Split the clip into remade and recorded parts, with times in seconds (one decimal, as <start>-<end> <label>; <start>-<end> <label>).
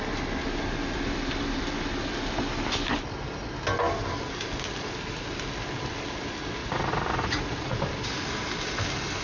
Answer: 0.0-6.6 recorded; 6.6-7.8 remade; 7.8-9.2 recorded